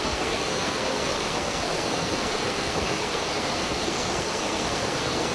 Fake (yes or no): yes